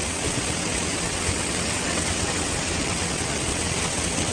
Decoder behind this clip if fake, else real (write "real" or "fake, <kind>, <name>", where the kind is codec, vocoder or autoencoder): fake, vocoder, WaveNeXt